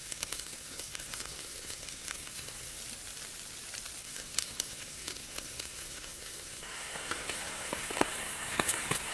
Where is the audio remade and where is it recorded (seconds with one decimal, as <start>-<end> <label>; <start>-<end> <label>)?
0.0-2.8 remade; 2.8-4.0 recorded; 4.0-9.1 remade